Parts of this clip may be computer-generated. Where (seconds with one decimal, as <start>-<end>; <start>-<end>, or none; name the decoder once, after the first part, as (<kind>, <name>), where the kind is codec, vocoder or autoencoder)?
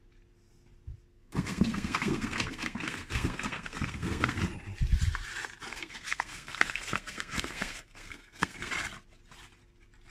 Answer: 1.1-4.4 (codec, SNAC); 5.7-8.7